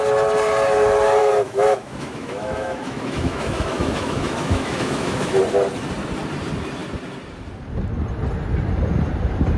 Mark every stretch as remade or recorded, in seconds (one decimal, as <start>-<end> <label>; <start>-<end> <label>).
0.0-1.2 recorded; 1.2-5.4 remade; 5.4-9.6 recorded